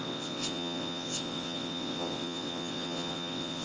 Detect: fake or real fake